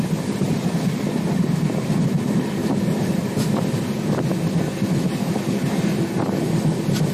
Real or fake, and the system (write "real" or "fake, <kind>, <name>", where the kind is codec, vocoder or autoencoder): real